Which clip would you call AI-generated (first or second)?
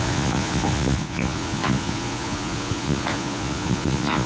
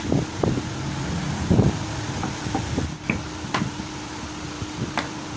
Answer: first